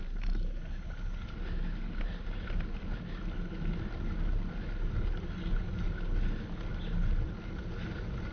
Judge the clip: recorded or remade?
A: recorded